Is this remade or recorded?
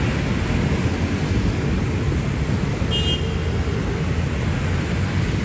recorded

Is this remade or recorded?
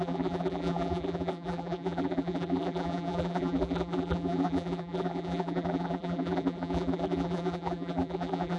remade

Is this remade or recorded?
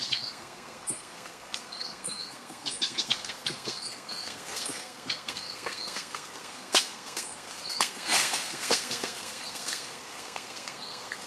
remade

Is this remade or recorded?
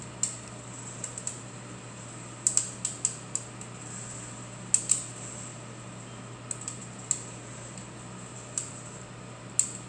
recorded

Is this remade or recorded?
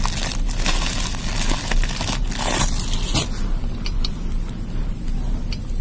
recorded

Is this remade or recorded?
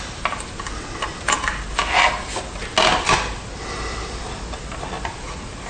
recorded